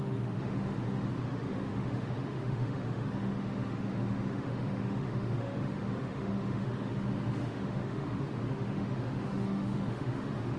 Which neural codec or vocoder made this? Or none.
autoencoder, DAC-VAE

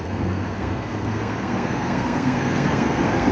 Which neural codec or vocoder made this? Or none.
codec, SNAC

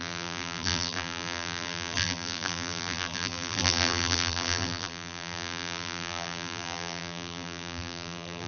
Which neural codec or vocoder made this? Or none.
vocoder, BigVGAN v2